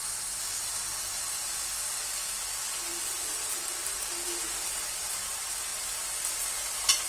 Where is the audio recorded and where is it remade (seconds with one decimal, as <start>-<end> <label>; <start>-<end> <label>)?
0.0-7.1 recorded